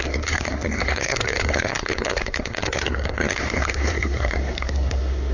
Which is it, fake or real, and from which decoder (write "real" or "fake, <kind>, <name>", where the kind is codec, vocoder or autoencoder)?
fake, codec, SNAC